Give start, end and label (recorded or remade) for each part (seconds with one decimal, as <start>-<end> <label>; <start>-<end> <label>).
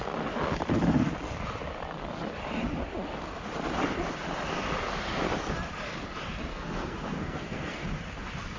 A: 0.0-6.5 recorded; 6.5-7.8 remade; 7.8-8.6 recorded